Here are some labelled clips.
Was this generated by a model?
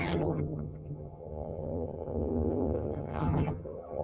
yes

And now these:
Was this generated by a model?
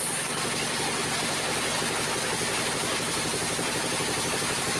no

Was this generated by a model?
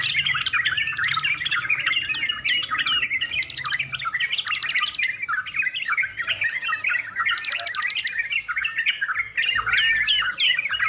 no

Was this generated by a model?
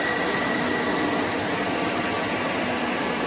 no